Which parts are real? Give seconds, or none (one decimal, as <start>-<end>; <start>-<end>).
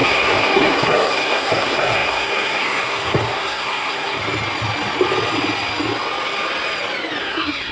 4.2-7.2